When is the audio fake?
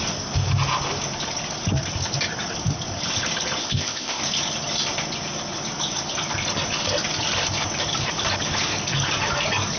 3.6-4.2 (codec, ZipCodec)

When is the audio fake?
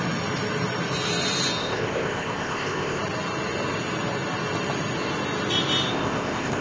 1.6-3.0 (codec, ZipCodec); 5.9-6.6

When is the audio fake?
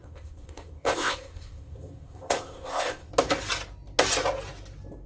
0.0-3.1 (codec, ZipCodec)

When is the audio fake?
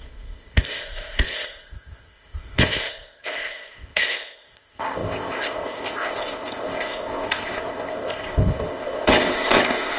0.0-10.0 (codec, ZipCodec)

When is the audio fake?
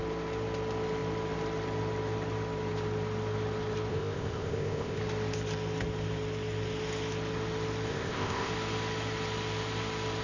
3.9-5.0 (codec, ZipCodec); 7.9-8.5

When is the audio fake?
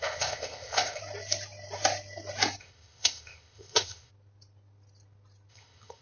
0.0-1.0 (codec, ZipCodec); 2.6-4.1; 5.5-6.0